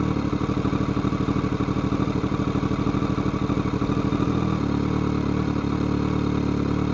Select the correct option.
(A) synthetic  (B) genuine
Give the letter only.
B